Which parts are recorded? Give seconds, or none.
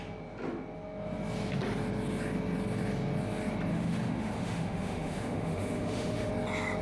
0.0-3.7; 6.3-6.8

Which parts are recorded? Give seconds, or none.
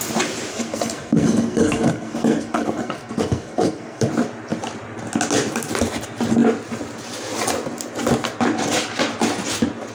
0.0-0.5; 4.1-9.9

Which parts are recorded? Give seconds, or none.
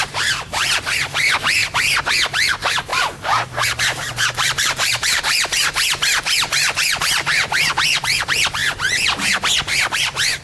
8.6-10.0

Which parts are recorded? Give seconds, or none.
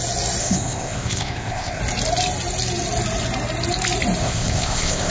0.0-0.4; 1.8-4.2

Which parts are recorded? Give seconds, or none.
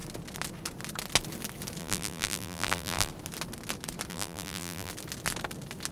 0.0-1.8; 3.1-4.1; 4.9-5.9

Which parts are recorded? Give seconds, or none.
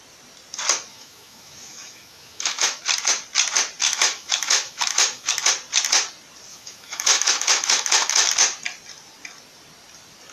0.0-0.9; 2.8-3.8; 5.5-6.5; 8.3-10.3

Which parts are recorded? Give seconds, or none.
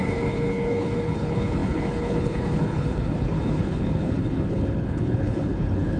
none